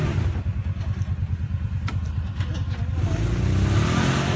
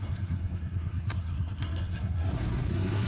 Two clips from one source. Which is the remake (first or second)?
second